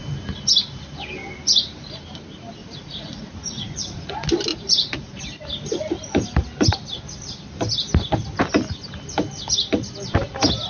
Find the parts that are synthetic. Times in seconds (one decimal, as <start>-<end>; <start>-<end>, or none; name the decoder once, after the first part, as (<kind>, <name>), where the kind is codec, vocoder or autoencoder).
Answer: 2.6-4.1 (vocoder, Vocos); 4.5-5.2